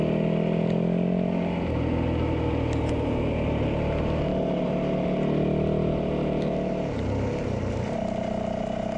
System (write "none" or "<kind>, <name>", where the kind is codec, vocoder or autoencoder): none